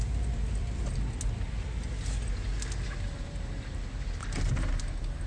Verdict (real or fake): real